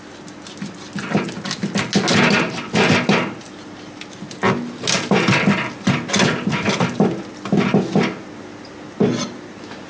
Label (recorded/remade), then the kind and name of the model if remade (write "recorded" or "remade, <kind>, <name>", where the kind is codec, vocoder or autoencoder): recorded